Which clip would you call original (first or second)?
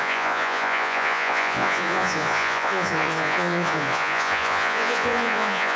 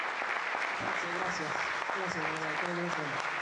second